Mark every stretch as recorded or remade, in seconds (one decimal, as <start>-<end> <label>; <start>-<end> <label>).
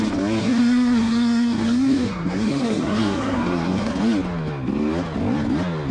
0.0-0.4 recorded; 0.4-3.9 remade; 3.9-5.9 recorded